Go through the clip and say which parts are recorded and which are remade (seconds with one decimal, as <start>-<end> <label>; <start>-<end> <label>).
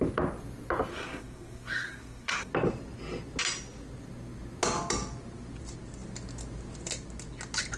0.0-0.9 recorded; 0.9-2.5 remade; 2.5-7.8 recorded